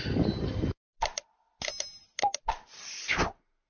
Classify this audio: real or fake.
real